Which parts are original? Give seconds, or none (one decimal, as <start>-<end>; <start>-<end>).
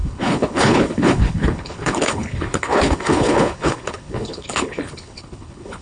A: none